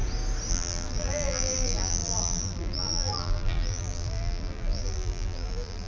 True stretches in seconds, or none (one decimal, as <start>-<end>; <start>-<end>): 0.0-0.5